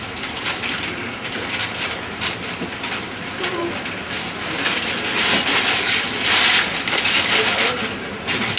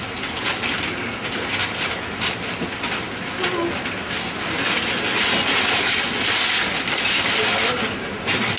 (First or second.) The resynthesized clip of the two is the first